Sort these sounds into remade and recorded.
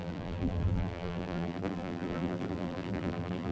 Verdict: remade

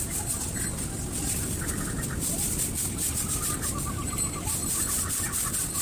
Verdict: remade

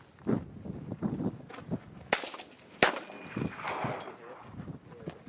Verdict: recorded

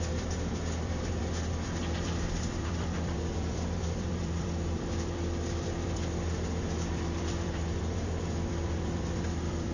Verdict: remade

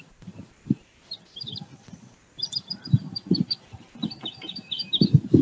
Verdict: remade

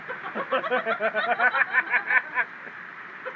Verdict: recorded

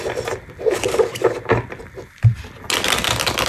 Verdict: recorded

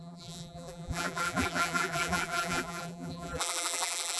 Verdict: remade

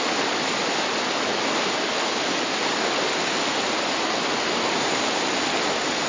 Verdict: recorded